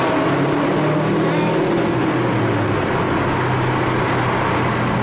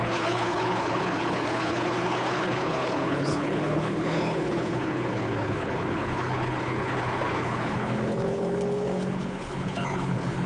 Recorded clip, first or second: first